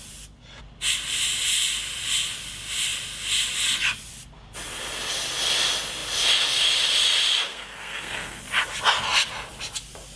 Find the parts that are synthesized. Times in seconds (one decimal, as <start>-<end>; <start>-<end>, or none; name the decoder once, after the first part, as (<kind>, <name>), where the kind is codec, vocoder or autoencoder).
7.5-8.4 (codec, SNAC)